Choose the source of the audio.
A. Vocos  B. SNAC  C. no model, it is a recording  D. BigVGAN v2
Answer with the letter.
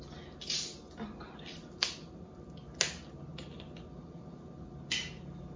C